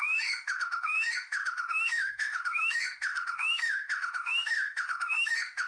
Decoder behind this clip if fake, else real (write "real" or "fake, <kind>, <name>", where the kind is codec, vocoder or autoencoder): fake, autoencoder, DAC-VAE